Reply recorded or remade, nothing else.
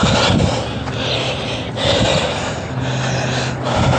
recorded